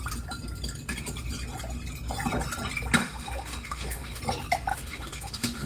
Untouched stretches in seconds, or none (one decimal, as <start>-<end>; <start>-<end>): 0.0-3.0; 4.2-4.7